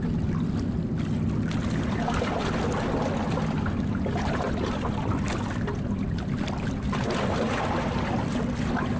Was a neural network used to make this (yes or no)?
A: no